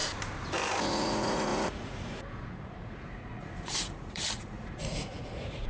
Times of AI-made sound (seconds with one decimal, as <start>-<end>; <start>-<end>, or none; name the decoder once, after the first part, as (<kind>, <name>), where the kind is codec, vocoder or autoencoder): 0.8-5.7 (vocoder, Vocos)